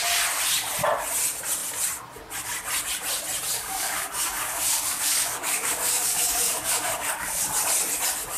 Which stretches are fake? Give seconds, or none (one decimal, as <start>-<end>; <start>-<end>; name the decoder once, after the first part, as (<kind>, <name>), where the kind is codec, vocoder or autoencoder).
3.5-7.4 (codec, DAC)